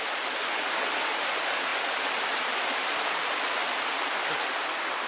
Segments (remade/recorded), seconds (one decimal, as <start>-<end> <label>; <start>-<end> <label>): 0.0-5.1 recorded